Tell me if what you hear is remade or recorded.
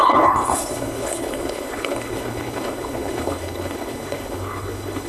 remade